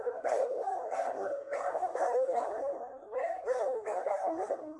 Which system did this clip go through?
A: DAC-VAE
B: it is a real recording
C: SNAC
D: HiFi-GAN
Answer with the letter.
C